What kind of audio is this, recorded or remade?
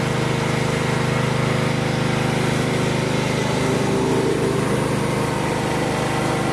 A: recorded